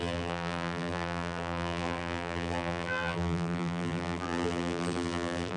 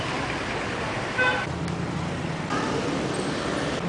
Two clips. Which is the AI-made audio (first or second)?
first